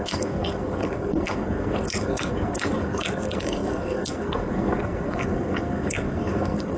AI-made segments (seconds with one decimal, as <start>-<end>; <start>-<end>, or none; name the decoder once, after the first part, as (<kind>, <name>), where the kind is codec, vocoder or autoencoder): 0.0-6.8 (codec, SNAC)